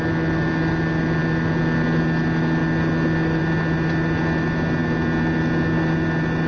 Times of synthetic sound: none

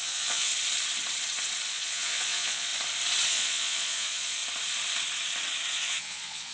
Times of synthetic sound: 0.0-0.5 (vocoder, Vocos); 1.7-2.7; 3.3-4.4; 5.7-6.5